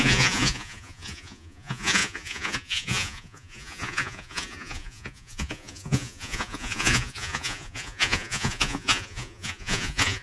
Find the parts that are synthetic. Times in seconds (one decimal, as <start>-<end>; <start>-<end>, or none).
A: 0.0-10.2